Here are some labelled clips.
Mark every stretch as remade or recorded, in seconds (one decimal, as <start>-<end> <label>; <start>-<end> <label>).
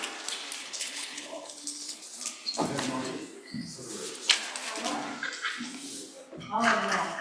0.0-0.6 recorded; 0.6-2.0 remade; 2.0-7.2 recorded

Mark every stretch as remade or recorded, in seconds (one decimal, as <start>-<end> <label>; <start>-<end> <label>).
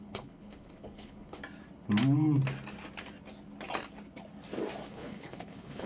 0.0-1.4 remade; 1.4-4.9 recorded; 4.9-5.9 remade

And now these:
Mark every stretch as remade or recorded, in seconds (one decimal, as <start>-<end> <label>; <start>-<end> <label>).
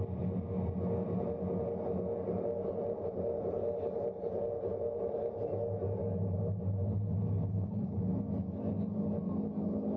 0.0-7.5 recorded; 7.5-8.0 remade; 8.0-10.0 recorded